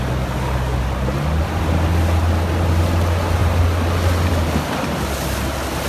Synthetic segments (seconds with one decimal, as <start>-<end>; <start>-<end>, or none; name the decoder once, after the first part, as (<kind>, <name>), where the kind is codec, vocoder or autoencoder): none